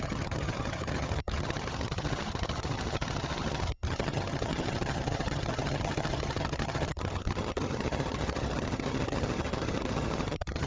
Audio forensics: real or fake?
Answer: fake